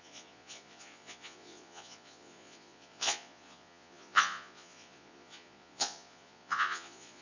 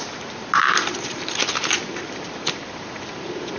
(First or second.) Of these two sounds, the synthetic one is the first